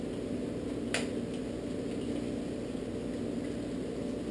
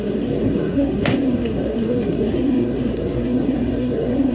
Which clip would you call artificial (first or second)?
second